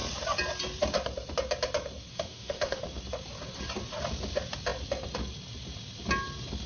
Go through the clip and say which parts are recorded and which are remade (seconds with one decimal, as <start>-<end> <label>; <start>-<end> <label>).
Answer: 0.0-2.1 recorded; 2.1-2.8 remade; 2.8-6.7 recorded